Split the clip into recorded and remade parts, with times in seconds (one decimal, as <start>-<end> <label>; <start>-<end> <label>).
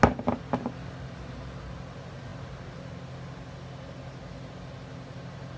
0.0-5.6 recorded